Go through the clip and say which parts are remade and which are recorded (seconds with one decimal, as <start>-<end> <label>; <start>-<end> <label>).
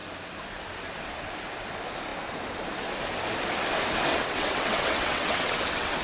0.0-4.1 recorded; 4.1-6.0 remade